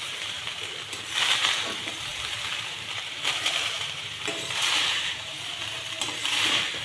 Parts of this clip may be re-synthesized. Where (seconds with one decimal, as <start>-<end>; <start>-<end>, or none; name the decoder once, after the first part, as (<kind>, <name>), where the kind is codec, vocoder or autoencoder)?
0.0-6.8 (vocoder, BigVGAN v2)